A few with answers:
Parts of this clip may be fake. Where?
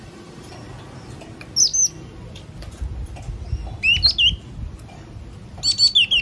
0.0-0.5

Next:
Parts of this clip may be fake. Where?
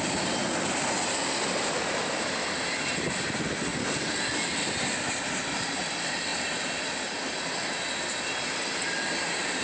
0.0-0.4; 1.4-9.6